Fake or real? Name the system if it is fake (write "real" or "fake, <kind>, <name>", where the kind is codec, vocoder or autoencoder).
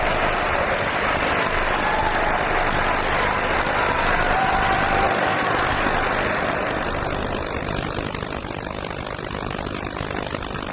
real